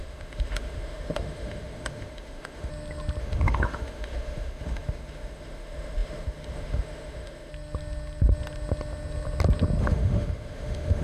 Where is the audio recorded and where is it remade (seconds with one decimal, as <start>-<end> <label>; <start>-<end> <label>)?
0.0-2.7 remade; 2.7-3.2 recorded; 3.2-7.5 remade; 7.5-9.8 recorded; 9.8-11.0 remade